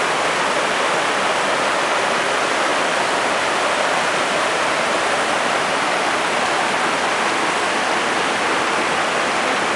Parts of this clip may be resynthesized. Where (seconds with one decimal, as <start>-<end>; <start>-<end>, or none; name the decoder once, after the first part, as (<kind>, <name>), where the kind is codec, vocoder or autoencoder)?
2.7-7.7 (vocoder, BigVGAN v2)